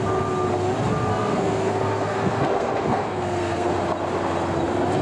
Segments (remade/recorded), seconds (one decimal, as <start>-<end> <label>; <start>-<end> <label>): 0.0-1.1 recorded; 1.1-3.7 remade; 3.7-5.0 recorded